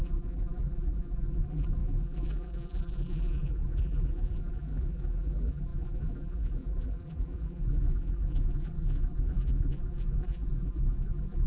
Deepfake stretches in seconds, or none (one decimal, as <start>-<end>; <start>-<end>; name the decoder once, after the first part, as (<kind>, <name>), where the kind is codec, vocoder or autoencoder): 0.0-11.5 (vocoder, BigVGAN v2)

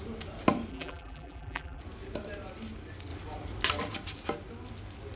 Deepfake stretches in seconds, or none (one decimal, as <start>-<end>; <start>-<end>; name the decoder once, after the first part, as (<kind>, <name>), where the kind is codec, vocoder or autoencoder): 0.7-1.8 (vocoder, BigVGAN v2)

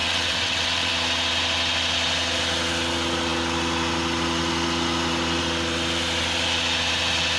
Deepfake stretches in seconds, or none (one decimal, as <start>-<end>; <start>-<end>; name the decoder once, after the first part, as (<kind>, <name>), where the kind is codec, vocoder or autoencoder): 0.0-0.9 (vocoder, WaveNeXt)

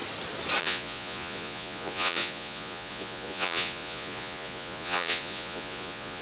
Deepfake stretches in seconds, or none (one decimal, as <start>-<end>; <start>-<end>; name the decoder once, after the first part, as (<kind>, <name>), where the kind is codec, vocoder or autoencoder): 0.6-6.2 (vocoder, Vocos)

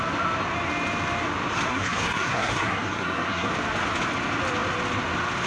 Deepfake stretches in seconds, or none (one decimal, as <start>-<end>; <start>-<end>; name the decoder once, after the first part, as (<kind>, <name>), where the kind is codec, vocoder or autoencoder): 1.7-3.5 (codec, SNAC)

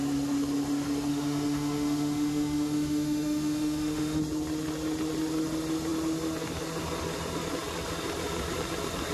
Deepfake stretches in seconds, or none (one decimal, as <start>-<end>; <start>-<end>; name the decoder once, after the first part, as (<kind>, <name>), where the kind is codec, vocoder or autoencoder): 1.1-4.2 (autoencoder, DAC-VAE)

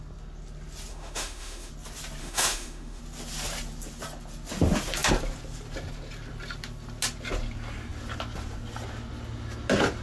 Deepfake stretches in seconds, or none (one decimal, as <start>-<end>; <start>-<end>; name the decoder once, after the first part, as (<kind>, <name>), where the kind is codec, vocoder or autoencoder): 0.9-1.7 (autoencoder, DAC-VAE); 2.2-3.0

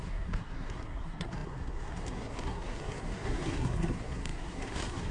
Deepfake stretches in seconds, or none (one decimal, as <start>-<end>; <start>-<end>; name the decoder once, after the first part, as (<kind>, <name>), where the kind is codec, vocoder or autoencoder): 0.0-5.1 (codec, SNAC)